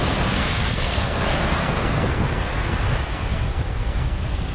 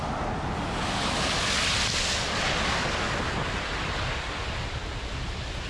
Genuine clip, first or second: second